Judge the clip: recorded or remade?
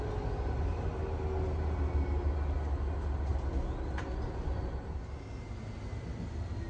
recorded